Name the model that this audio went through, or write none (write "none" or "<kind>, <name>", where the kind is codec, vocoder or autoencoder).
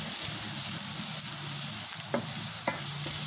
none